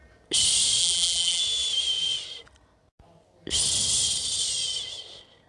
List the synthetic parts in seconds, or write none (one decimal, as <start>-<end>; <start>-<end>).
0.8-1.4